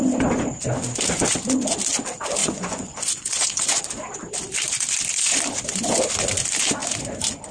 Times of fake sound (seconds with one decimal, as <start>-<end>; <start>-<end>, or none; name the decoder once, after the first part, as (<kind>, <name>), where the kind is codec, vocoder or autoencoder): 2.4-3.8 (vocoder, Vocos)